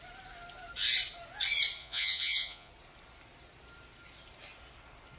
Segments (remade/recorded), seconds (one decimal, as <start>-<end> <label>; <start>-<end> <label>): 0.0-1.8 recorded; 1.8-2.7 remade; 2.7-5.2 recorded